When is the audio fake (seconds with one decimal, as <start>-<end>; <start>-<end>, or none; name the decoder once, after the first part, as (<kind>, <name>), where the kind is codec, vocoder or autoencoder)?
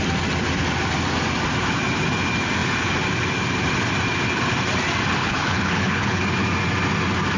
5.2-6.2 (codec, HILCodec)